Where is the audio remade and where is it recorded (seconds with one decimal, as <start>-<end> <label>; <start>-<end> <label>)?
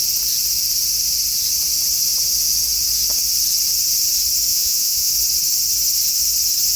0.0-4.5 recorded; 4.5-5.1 remade; 5.1-6.8 recorded